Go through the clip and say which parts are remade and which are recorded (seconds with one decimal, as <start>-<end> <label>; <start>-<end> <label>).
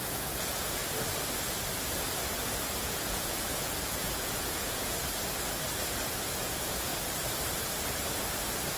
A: 0.0-0.8 remade; 0.8-2.8 recorded; 2.8-5.0 remade; 5.0-6.1 recorded; 6.1-6.9 remade; 6.9-8.8 recorded